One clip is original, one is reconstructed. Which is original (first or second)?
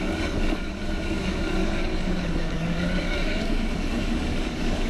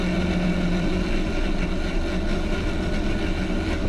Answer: second